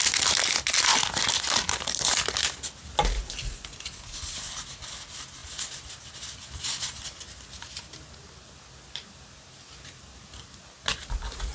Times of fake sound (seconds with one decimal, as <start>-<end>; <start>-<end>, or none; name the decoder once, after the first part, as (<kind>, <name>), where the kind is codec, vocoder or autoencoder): none